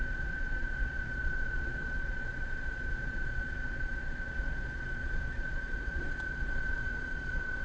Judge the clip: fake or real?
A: fake